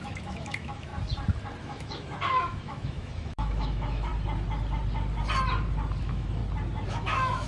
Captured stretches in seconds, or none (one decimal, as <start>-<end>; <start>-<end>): 0.9-1.6; 4.1-6.0; 6.4-6.9